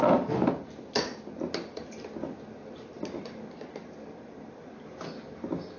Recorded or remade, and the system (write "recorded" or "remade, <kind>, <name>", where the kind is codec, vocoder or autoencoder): recorded